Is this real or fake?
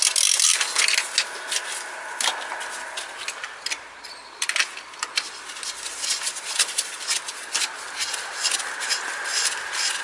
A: real